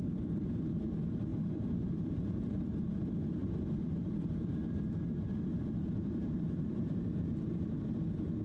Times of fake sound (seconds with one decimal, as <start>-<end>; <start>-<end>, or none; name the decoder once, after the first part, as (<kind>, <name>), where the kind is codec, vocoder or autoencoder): 1.3-2.6 (vocoder, BigVGAN v2); 6.0-7.9